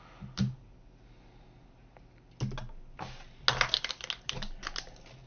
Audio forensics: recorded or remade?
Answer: recorded